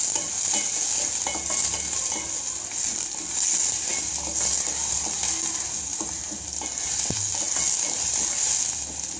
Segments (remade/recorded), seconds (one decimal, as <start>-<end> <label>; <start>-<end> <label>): 0.0-9.2 recorded

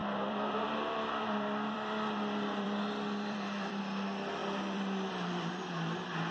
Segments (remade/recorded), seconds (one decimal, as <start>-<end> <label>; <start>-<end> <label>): 0.0-3.8 remade; 3.8-4.4 recorded; 4.4-5.5 remade; 5.5-6.3 recorded